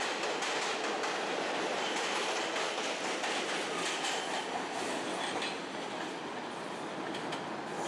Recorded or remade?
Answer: recorded